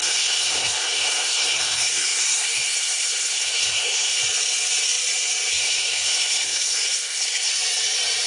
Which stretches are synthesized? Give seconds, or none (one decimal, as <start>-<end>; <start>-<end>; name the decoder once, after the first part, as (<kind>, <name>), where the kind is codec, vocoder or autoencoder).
0.0-4.2 (codec, SNAC); 5.5-7.5